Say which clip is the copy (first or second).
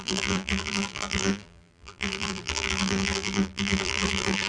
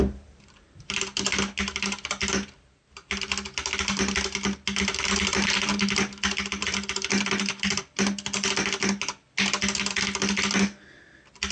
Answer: first